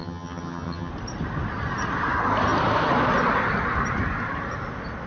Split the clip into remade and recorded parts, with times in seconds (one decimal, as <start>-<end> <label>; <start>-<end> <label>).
0.0-0.9 remade; 0.9-5.1 recorded